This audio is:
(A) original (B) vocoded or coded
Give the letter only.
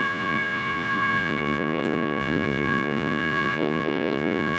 B